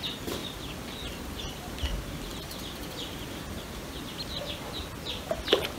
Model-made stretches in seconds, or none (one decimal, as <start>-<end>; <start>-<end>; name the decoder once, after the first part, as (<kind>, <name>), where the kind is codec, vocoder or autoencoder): none